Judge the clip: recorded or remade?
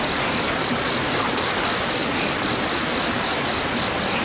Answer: recorded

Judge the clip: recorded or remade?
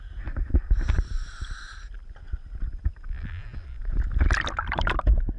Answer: recorded